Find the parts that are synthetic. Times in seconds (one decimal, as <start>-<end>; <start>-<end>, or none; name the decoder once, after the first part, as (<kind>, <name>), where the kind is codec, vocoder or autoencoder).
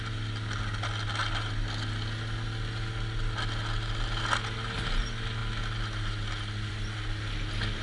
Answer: none